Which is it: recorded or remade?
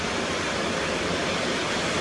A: recorded